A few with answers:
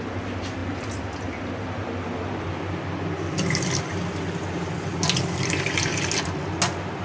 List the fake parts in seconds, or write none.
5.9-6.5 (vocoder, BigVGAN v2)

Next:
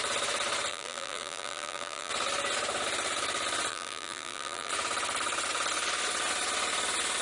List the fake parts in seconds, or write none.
0.7-2.1 (vocoder, BigVGAN v2); 3.7-4.7